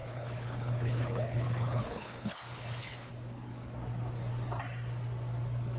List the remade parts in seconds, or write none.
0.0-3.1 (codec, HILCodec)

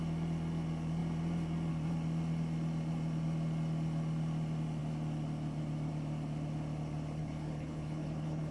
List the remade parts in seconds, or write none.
7.2-8.5 (codec, HILCodec)

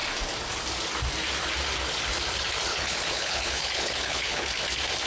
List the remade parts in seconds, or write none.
2.7-4.5 (codec, HILCodec)